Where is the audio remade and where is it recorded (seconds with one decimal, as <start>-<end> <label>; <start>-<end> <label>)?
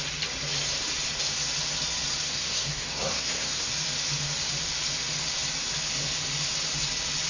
0.0-2.3 recorded; 2.3-3.7 remade; 3.7-7.3 recorded